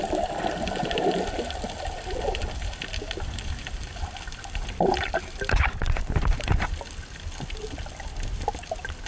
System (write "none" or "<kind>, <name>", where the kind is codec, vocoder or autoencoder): none